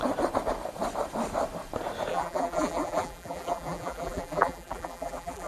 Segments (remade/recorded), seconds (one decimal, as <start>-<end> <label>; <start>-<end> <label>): 0.0-2.1 recorded; 2.1-5.5 remade